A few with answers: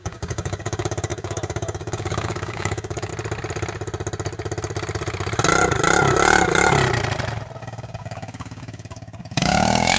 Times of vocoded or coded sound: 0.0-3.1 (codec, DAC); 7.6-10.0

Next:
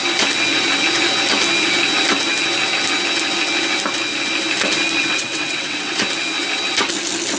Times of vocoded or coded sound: 5.1-6.0 (vocoder, WaveNeXt)

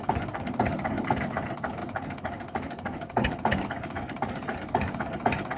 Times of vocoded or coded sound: 0.0-5.6 (codec, DAC)

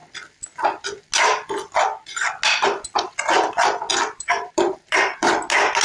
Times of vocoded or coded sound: 3.9-5.3 (vocoder, BigVGAN v2)